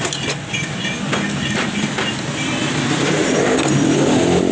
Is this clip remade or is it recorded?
recorded